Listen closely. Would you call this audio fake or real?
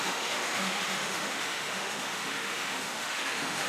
fake